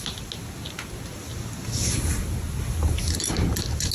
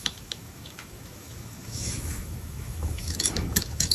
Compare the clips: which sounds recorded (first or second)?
first